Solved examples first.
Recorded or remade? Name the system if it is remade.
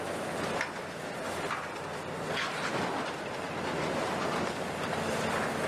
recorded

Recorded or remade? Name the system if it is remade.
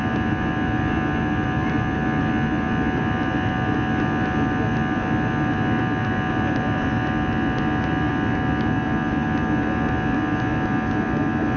recorded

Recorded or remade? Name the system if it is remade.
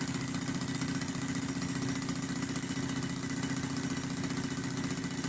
recorded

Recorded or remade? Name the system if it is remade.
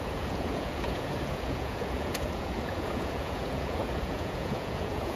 remade, vocoder, Vocos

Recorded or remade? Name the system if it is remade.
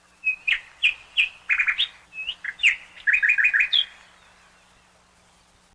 recorded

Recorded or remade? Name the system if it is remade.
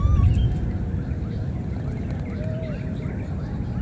recorded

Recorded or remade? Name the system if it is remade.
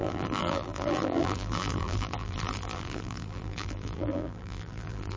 remade, vocoder, BigVGAN v2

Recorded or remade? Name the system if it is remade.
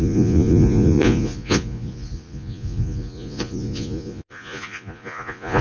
remade, vocoder, Vocos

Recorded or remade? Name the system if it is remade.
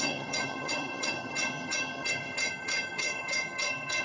remade, vocoder, HiFi-GAN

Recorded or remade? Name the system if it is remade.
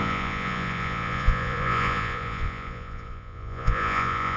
remade, vocoder, Vocos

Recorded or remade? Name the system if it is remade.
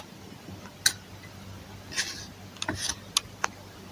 recorded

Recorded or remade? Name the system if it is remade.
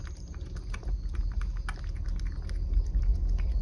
recorded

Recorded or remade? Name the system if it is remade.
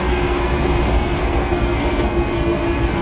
remade, codec, SNAC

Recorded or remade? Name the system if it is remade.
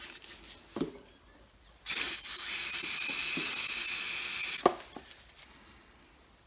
recorded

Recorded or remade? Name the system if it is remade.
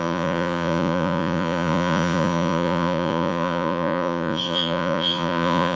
remade, vocoder, Vocos